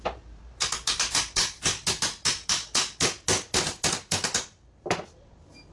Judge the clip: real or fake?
real